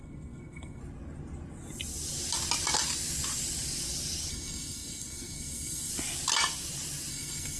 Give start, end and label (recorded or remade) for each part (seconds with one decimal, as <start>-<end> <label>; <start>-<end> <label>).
0.0-0.8 remade; 0.8-4.3 recorded; 4.3-5.9 remade; 5.9-7.1 recorded; 7.1-7.6 remade